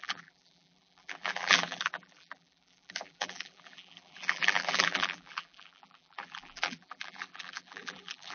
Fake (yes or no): yes